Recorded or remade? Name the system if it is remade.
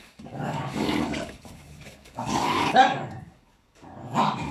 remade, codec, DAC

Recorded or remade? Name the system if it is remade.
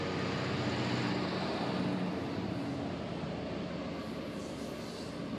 recorded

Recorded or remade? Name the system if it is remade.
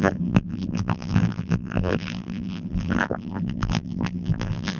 remade, vocoder, BigVGAN v2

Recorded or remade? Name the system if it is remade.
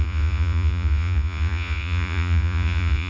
remade, vocoder, Vocos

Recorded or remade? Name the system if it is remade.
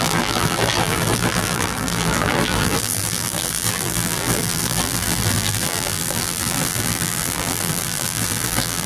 remade, vocoder, BigVGAN v2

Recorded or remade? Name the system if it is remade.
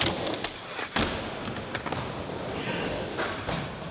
recorded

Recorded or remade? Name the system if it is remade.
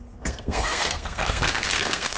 remade, codec, SNAC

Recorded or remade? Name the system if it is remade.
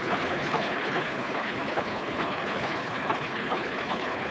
remade, codec, HILCodec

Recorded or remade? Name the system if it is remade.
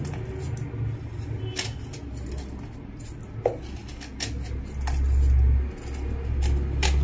recorded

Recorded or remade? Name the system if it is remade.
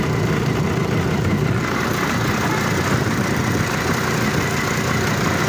recorded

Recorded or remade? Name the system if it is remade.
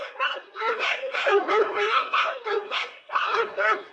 remade, codec, SNAC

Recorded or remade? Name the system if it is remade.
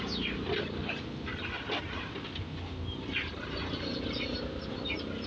recorded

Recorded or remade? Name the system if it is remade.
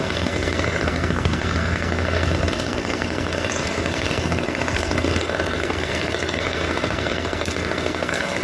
remade, codec, SNAC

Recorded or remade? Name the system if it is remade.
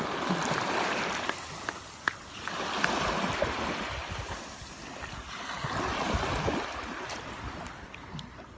recorded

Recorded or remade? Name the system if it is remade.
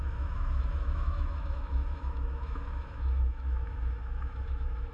remade, autoencoder, DAC-VAE